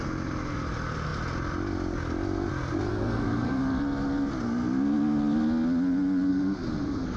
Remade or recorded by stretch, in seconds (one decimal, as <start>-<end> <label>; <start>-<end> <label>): 0.0-2.9 recorded; 2.9-3.6 remade; 3.6-6.3 recorded; 6.3-7.2 remade